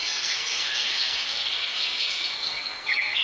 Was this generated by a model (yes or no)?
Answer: yes